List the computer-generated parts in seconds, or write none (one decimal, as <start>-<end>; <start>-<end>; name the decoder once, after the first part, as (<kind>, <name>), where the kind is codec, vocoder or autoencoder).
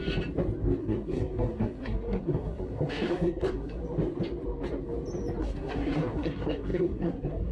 0.8-3.8 (codec, SNAC); 5.4-7.5